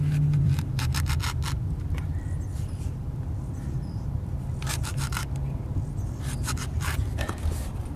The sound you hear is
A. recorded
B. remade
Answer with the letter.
B